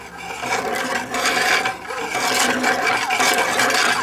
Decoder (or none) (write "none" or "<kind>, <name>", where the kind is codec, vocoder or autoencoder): none